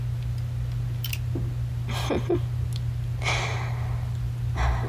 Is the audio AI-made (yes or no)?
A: no